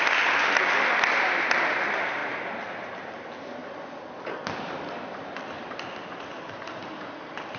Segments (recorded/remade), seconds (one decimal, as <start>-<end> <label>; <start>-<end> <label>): 0.0-7.6 recorded